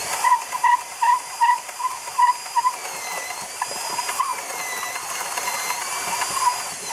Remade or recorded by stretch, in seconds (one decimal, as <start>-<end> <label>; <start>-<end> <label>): 0.0-4.3 remade; 4.3-5.1 recorded; 5.1-6.9 remade